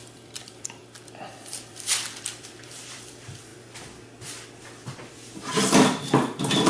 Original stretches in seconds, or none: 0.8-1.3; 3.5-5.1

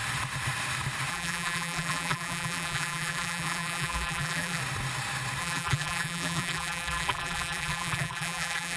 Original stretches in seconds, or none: 0.0-1.1; 4.6-5.4

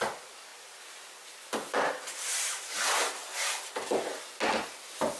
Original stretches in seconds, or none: 0.0-0.5; 2.7-5.2

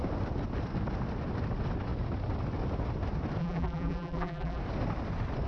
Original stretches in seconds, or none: 0.0-3.4; 4.6-5.5

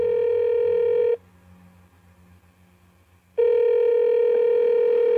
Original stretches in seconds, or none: 0.0-5.2

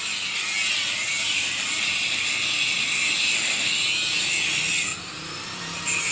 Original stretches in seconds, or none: 0.0-1.1; 4.5-4.9; 5.6-6.1

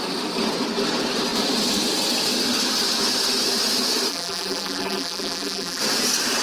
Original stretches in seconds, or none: 0.0-4.1; 5.8-6.4

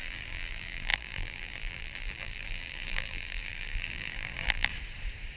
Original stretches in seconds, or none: 4.7-5.4